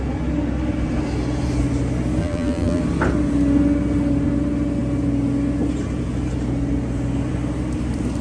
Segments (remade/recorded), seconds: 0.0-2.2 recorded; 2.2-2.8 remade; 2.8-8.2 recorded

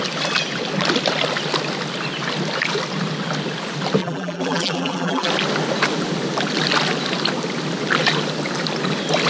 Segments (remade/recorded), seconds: 0.0-4.0 recorded; 4.0-5.3 remade; 5.3-9.3 recorded